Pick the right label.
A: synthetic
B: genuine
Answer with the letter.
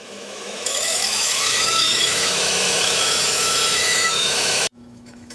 A